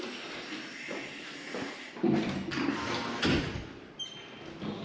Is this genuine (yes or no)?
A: yes